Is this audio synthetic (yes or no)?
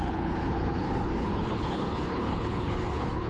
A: yes